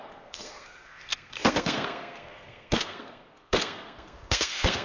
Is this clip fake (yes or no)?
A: yes